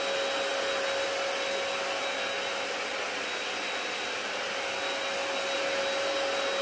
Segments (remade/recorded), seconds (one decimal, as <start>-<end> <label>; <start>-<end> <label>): 0.0-6.6 recorded